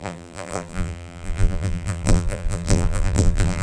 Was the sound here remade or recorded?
remade